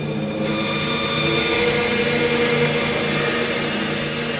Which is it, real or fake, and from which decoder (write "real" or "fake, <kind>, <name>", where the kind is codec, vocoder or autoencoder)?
real